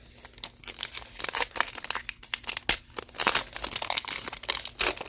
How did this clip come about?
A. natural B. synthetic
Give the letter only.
A